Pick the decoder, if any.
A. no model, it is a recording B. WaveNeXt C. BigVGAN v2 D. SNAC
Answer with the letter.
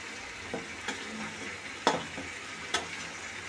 A